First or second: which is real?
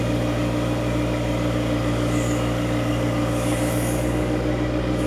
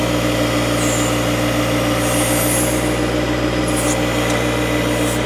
second